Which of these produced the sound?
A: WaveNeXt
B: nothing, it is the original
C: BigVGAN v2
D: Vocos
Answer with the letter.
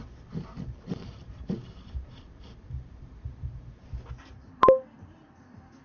C